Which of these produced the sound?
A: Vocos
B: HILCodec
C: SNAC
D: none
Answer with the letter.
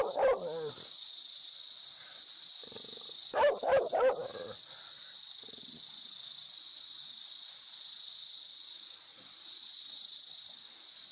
D